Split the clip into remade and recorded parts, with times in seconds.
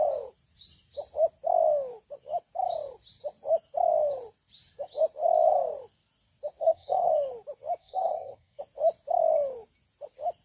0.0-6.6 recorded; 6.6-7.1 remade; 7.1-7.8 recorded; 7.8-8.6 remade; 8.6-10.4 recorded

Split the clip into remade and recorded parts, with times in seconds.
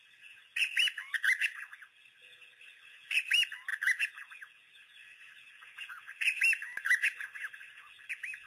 0.0-8.5 recorded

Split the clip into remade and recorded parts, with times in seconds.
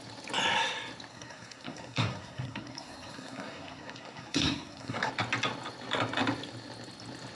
0.0-1.1 recorded; 1.1-5.1 remade; 5.1-7.4 recorded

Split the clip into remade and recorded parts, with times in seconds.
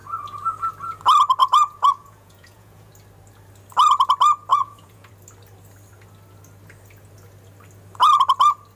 0.0-1.4 recorded; 1.4-2.9 remade; 2.9-4.5 recorded; 4.5-5.1 remade; 5.1-8.8 recorded